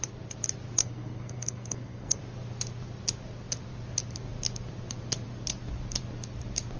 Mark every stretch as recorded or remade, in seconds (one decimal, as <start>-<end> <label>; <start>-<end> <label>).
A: 0.0-0.8 recorded; 0.8-2.2 remade; 2.2-6.8 recorded

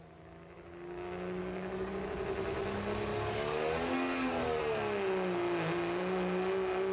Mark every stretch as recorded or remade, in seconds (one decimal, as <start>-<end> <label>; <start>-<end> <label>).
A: 0.0-1.4 recorded; 1.4-1.9 remade; 1.9-3.1 recorded; 3.1-4.6 remade; 4.6-6.9 recorded

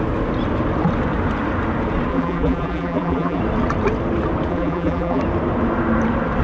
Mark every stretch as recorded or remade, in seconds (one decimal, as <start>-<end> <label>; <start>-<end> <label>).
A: 0.0-2.1 recorded; 2.1-3.4 remade; 3.4-4.5 recorded; 4.5-5.2 remade; 5.2-6.4 recorded

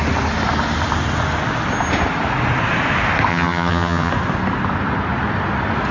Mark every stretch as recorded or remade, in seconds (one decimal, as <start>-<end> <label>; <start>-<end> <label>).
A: 0.0-3.3 recorded; 3.3-4.1 remade; 4.1-5.9 recorded

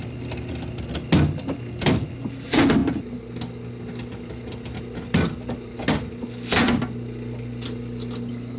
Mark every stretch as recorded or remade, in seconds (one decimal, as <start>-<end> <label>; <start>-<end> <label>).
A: 0.0-8.6 recorded

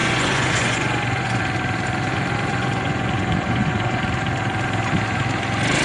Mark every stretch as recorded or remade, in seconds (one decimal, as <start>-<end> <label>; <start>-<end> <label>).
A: 0.0-1.4 remade; 1.4-2.5 recorded; 2.5-4.0 remade; 4.0-5.8 recorded